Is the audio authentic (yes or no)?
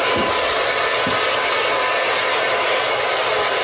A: yes